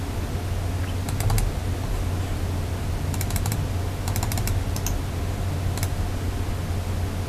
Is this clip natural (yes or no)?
yes